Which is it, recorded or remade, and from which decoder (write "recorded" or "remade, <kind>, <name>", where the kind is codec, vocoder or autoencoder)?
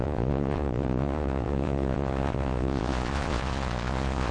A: remade, vocoder, Vocos